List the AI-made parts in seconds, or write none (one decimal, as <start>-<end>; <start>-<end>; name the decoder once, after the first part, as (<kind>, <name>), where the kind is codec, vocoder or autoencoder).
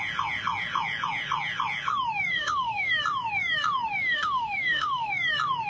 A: 2.3-2.9 (autoencoder, DAC-VAE); 4.0-5.1